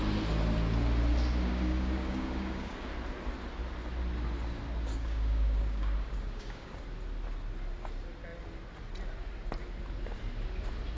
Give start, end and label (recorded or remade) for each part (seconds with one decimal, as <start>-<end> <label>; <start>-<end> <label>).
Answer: 0.0-1.5 recorded; 1.5-2.9 remade; 2.9-4.9 recorded; 4.9-6.8 remade; 6.8-11.0 recorded